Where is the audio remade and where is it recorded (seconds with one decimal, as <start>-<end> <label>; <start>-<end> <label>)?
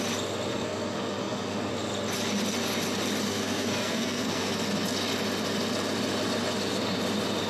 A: 0.0-0.5 recorded; 0.5-1.7 remade; 1.7-3.3 recorded; 3.3-4.5 remade; 4.5-7.5 recorded